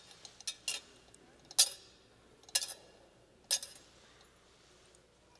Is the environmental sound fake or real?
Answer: real